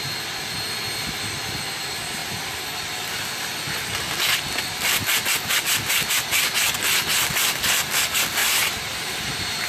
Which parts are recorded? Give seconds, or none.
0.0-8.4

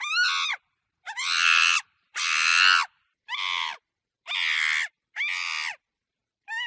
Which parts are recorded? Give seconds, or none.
0.0-6.7

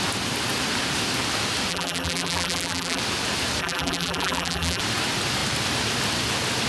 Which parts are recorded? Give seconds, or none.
0.0-1.7; 3.0-3.6; 4.8-6.7